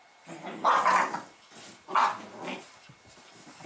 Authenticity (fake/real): real